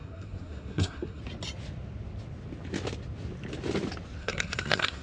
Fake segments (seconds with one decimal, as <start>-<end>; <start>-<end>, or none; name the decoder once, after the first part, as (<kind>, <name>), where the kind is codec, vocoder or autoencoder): 0.0-1.2 (codec, SNAC); 4.2-5.0